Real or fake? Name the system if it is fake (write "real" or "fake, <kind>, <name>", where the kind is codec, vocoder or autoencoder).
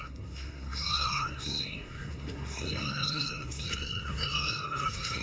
fake, codec, SNAC